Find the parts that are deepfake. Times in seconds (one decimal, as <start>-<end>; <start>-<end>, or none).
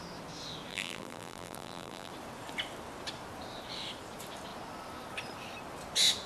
0.7-2.1